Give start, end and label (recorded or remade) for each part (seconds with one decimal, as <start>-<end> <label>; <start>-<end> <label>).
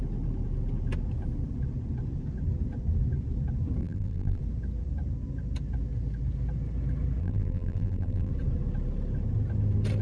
0.0-3.8 recorded; 3.8-4.4 remade; 4.4-7.2 recorded; 7.2-8.3 remade; 8.3-10.0 recorded